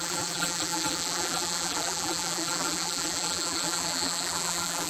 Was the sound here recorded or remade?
remade